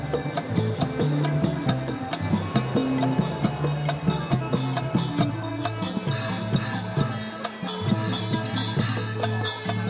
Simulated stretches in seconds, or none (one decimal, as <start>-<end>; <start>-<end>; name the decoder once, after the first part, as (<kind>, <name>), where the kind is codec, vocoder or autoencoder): none

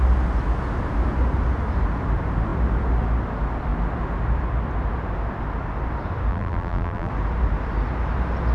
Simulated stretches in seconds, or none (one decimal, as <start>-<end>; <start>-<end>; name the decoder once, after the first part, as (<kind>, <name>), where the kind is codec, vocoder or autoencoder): 6.3-7.1 (vocoder, BigVGAN v2)

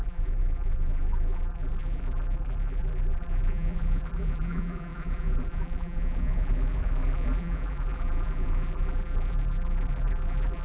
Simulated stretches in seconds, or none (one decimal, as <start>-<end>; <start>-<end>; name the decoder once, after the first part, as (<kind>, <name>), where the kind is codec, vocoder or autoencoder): 0.0-10.6 (vocoder, BigVGAN v2)

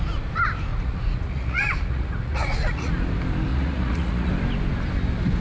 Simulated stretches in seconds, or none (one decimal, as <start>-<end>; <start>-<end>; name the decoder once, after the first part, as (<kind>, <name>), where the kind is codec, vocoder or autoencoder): 0.7-2.9 (vocoder, Vocos); 3.5-4.3

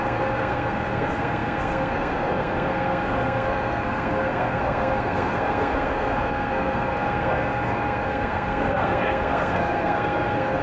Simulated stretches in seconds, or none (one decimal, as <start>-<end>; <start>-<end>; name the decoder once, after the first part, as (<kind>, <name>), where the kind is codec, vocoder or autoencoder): 0.0-10.6 (codec, SNAC)

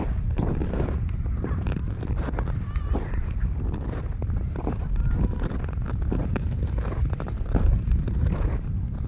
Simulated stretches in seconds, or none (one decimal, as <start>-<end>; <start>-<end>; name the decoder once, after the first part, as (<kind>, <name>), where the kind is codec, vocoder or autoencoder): 0.0-9.1 (vocoder, BigVGAN v2)

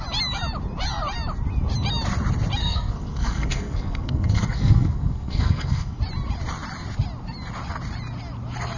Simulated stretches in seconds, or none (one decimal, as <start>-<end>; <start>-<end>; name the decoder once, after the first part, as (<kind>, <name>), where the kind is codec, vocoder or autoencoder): 2.6-6.0 (codec, SNAC)

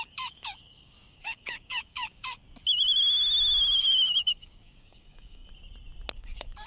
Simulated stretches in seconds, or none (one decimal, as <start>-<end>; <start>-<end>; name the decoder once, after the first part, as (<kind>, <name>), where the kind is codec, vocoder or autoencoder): 0.0-2.4 (codec, DAC); 3.8-5.4; 6.1-6.7